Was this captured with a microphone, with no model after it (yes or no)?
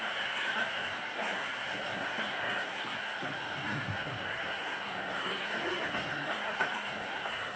no